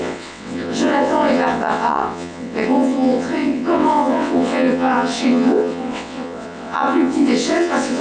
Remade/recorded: remade